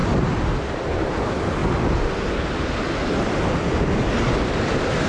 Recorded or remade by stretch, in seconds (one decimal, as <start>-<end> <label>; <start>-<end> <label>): 0.0-5.1 recorded